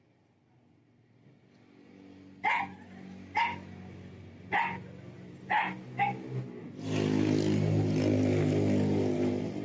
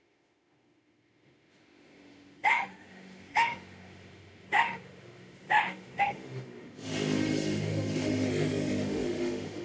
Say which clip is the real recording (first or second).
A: first